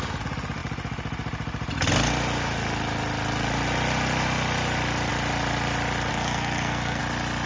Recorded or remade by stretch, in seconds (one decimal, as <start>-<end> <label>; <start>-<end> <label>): 0.0-6.1 recorded; 6.1-7.0 remade; 7.0-7.5 recorded